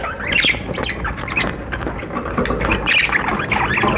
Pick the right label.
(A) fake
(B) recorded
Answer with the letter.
B